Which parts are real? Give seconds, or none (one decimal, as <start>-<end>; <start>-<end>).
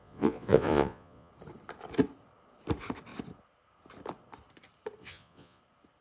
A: 1.3-5.0; 5.6-6.0